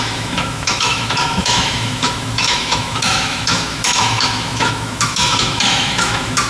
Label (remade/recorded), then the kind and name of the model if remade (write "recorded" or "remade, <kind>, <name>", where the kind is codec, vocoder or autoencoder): remade, autoencoder, DAC-VAE